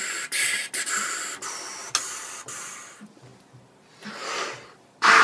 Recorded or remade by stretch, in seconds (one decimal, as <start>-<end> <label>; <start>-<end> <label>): 0.0-5.2 recorded